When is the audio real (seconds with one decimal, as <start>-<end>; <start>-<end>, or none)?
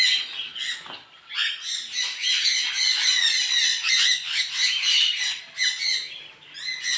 0.0-2.2; 2.7-3.7; 5.4-7.0